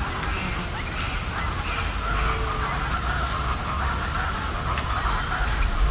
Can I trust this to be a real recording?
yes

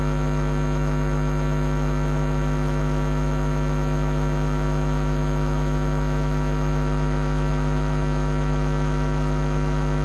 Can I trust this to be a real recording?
no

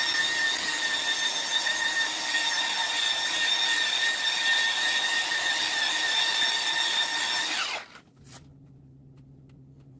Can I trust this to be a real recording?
yes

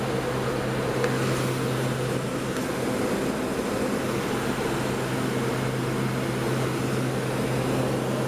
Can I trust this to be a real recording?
yes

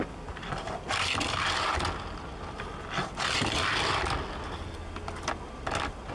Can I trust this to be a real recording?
yes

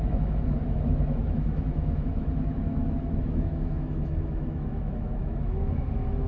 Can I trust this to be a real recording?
no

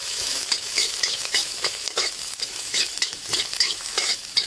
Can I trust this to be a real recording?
no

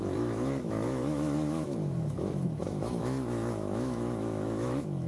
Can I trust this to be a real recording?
no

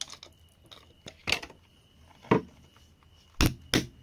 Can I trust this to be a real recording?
yes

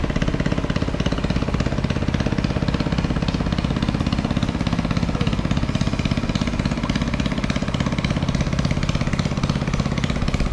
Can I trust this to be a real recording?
yes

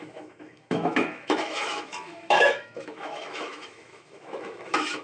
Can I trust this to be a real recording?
no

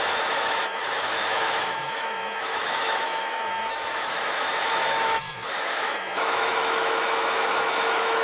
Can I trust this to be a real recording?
no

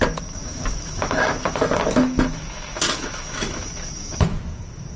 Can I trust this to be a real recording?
no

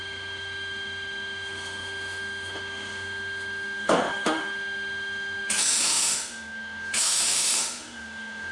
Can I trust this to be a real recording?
no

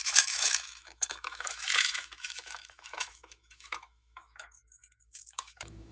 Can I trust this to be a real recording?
no